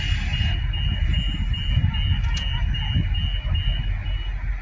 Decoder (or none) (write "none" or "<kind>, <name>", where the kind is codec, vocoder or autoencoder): none